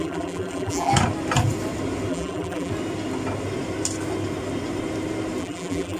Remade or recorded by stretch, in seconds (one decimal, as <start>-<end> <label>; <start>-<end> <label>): 0.0-0.9 remade; 0.9-2.1 recorded; 2.1-2.7 remade; 2.7-5.4 recorded; 5.4-6.0 remade